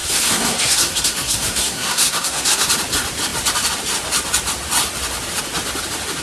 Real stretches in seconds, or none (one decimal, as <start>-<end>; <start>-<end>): 2.7-6.2